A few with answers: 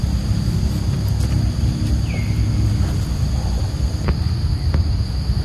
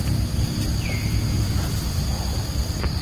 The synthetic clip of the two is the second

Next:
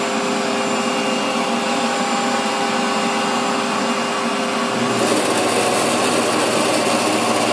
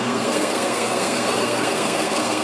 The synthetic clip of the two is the second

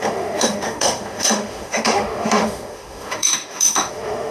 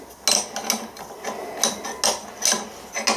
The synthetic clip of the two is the first